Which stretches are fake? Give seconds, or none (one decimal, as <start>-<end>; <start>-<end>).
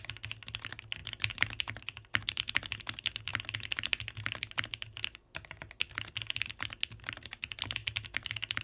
none